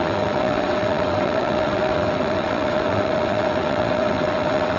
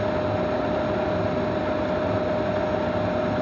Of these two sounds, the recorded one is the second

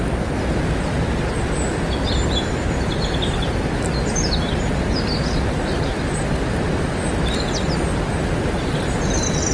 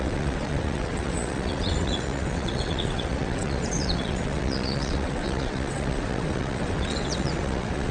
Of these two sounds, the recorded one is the first